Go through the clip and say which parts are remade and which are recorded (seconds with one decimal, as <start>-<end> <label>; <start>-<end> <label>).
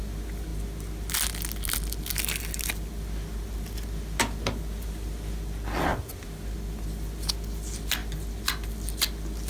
0.0-9.5 recorded